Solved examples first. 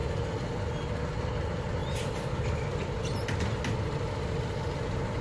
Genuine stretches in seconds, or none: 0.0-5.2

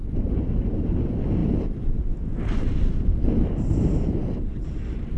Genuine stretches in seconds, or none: 0.0-5.2

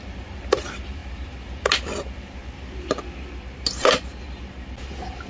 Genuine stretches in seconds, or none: 0.0-5.3

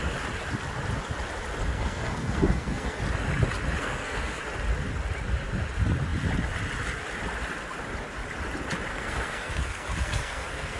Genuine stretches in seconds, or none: 0.0-1.7; 3.0-3.8; 4.4-8.9

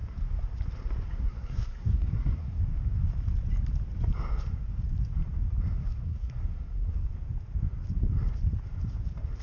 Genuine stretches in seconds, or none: 0.0-1.1; 2.6-5.8; 7.1-9.4

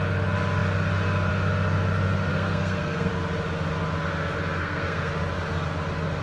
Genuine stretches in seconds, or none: 0.0-2.3; 3.1-4.6; 5.1-6.2

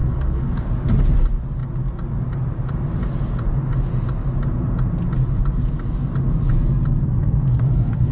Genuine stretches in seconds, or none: 0.7-7.0